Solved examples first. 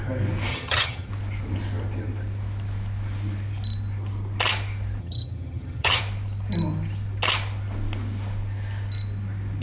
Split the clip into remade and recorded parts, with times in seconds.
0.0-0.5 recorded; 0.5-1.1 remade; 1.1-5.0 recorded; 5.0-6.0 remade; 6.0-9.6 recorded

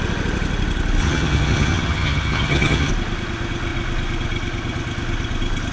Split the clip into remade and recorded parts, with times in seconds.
0.0-1.0 recorded; 1.0-2.9 remade; 2.9-5.7 recorded

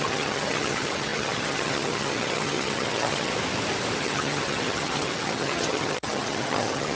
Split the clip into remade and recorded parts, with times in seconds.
0.0-3.3 remade; 3.3-4.0 recorded; 4.0-7.0 remade

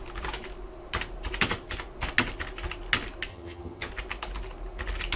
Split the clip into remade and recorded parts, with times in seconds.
0.0-3.3 recorded; 3.3-3.9 remade; 3.9-5.2 recorded

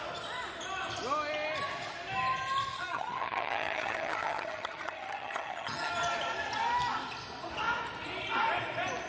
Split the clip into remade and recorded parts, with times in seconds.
0.0-2.7 recorded; 2.7-5.9 remade; 5.9-9.1 recorded

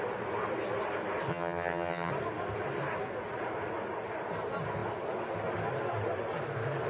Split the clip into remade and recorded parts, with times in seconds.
0.0-1.3 recorded; 1.3-2.1 remade; 2.1-6.9 recorded

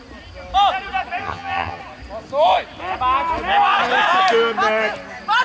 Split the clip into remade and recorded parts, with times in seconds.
0.0-1.2 recorded; 1.2-1.8 remade; 1.8-5.4 recorded